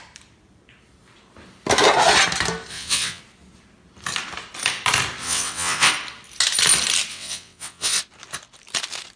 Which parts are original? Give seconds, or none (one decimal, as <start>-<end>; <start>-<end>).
0.0-2.7; 3.2-5.2; 5.9-7.1; 8.0-9.2